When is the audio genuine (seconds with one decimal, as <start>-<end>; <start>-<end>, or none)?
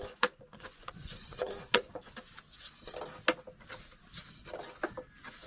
2.1-5.5